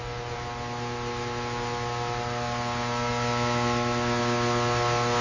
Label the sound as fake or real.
real